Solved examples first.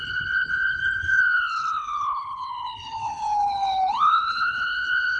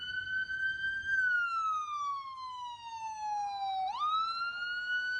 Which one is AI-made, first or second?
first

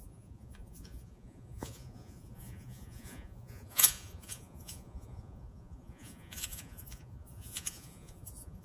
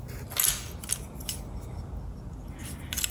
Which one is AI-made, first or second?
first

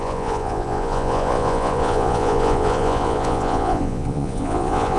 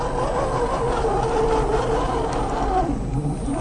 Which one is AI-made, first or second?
first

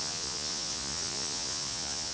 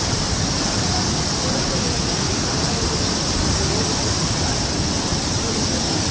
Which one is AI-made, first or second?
first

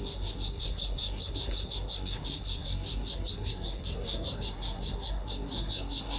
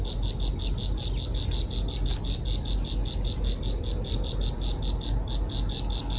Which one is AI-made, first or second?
first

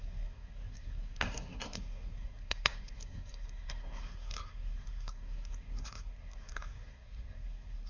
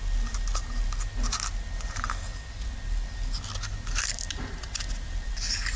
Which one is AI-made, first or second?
first